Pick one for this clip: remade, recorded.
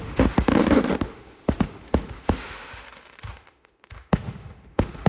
remade